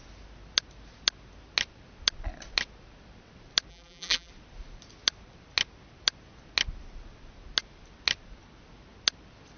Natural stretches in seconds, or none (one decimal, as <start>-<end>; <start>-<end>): 0.0-3.7; 4.3-9.6